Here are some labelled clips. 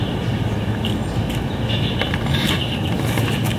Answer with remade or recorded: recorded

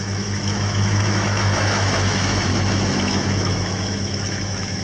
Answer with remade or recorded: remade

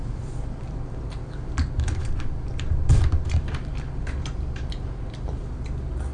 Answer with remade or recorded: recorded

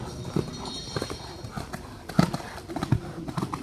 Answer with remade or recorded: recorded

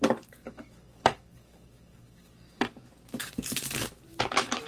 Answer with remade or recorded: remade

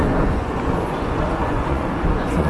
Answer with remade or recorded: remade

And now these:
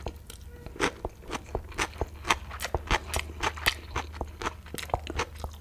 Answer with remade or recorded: recorded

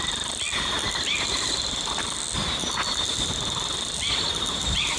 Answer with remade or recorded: recorded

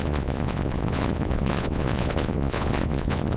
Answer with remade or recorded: remade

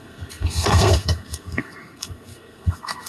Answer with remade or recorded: remade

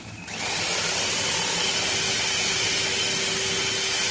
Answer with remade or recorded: recorded